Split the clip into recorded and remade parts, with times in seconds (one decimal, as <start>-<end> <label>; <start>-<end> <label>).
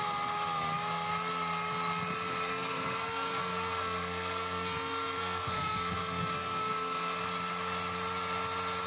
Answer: 0.0-2.5 recorded; 2.5-7.2 remade; 7.2-8.9 recorded